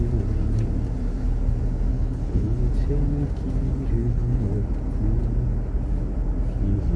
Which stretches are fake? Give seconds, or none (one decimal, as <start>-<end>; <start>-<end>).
1.9-2.6; 4.0-4.5